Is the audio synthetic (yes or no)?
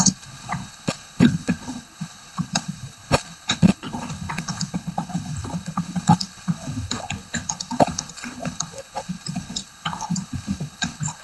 yes